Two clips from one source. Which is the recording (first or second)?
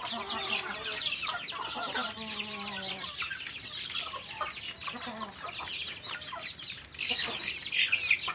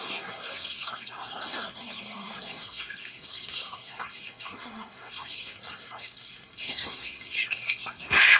first